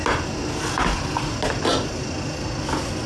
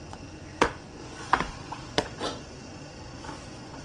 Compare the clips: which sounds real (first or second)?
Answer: first